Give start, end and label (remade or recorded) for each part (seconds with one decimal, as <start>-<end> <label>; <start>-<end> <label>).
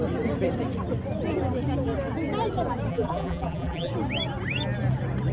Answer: 0.0-2.9 recorded; 2.9-3.9 remade; 3.9-5.3 recorded